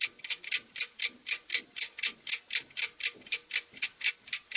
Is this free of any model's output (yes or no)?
yes